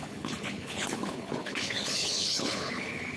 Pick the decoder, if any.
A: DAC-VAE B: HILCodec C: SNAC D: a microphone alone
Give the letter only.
B